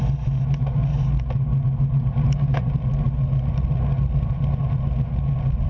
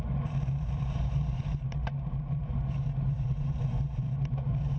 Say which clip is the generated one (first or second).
second